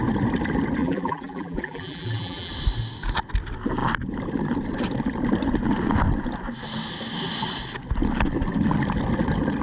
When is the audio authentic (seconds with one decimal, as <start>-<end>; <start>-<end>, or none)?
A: 0.0-0.8; 2.5-9.6